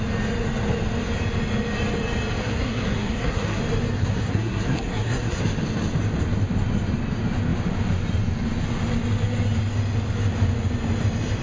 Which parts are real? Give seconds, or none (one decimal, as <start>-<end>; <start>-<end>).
0.0-2.4; 3.6-4.0; 5.4-11.4